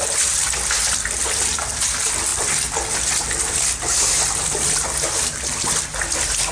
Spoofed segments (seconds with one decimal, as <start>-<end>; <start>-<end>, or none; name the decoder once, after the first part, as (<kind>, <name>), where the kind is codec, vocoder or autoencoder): none